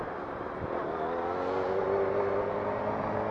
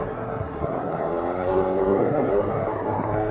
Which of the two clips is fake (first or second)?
second